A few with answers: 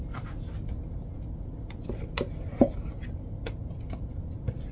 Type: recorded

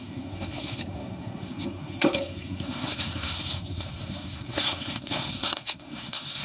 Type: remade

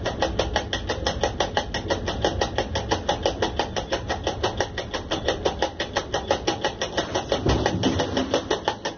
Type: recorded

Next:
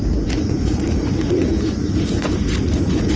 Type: remade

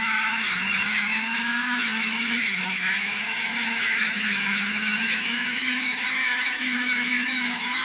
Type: remade